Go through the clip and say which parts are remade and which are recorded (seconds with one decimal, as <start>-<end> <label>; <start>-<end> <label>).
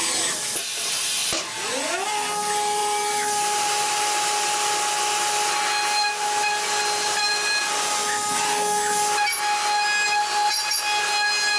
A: 0.0-2.8 recorded; 2.8-3.9 remade; 3.9-10.6 recorded; 10.6-11.6 remade